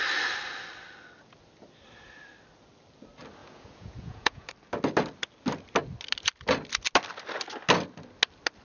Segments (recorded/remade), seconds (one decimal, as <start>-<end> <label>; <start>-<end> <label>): 0.0-3.4 recorded; 3.4-4.5 remade; 4.5-8.6 recorded